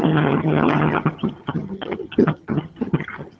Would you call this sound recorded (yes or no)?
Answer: no